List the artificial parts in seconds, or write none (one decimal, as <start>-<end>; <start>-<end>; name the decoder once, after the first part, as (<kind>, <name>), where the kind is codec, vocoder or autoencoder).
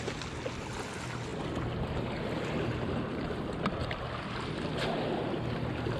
none